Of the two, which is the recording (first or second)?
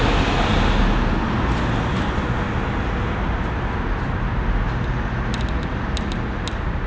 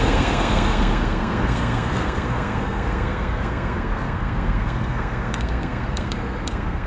first